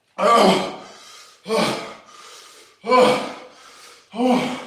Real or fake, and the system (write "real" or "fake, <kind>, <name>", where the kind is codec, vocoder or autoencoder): real